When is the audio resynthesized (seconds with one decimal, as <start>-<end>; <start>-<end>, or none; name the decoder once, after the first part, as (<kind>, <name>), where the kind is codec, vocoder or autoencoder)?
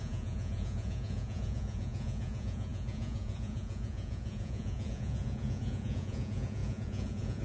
0.0-7.4 (vocoder, Vocos)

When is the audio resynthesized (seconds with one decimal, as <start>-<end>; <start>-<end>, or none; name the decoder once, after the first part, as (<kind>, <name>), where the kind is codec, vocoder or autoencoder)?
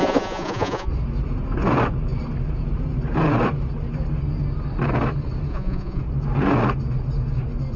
0.0-0.9 (vocoder, Vocos); 5.5-6.0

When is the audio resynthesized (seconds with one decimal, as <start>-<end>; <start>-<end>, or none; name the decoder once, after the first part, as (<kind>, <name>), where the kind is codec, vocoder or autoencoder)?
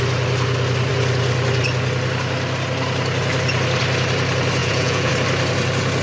4.6-5.1 (vocoder, Vocos)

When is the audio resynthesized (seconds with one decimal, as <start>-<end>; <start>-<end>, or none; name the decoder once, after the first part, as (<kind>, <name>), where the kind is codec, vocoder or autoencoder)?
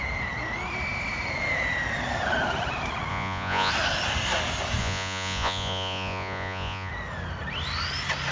3.1-3.7 (vocoder, Vocos); 4.8-6.9